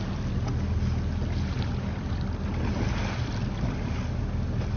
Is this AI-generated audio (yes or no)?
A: no